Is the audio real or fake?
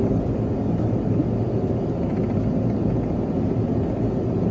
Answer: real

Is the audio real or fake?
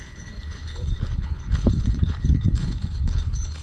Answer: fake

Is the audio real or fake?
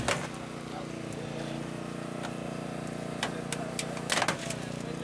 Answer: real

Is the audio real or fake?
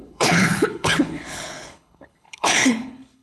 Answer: fake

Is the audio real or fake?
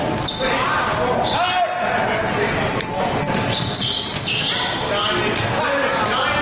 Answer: real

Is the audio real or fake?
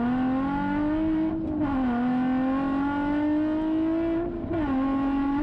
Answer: real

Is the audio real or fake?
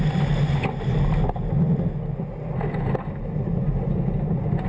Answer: real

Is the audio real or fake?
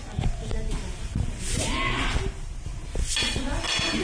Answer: real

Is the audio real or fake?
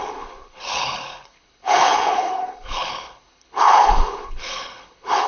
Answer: fake